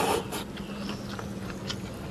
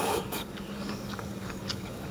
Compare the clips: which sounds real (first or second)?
first